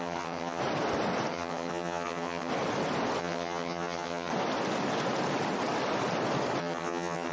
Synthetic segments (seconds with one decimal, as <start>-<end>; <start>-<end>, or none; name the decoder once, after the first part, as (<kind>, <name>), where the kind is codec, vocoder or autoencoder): 0.0-0.6 (vocoder, HiFi-GAN); 1.3-2.5; 3.2-4.3; 6.6-7.3